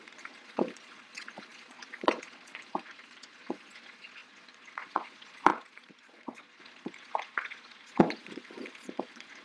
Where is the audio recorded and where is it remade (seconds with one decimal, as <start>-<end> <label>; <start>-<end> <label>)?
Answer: 0.0-9.4 remade